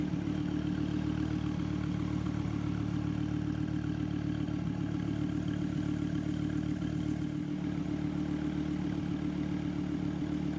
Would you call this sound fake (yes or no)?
no